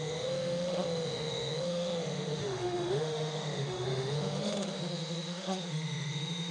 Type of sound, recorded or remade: remade